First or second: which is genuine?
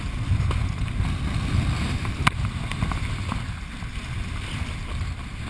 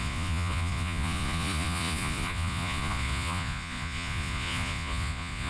first